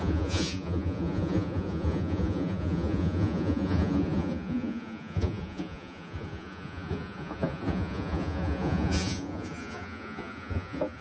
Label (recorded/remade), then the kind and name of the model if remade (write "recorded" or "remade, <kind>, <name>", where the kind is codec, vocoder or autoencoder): remade, vocoder, Vocos